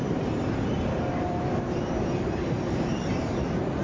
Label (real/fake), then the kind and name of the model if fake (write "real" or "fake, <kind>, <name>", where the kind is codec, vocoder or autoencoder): fake, vocoder, BigVGAN v2